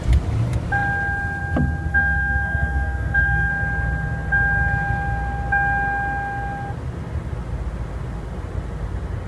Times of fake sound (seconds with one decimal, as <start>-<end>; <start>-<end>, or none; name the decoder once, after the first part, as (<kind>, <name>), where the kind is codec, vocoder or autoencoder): 1.9-3.5 (codec, SNAC)